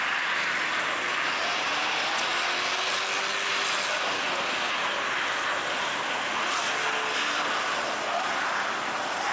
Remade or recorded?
recorded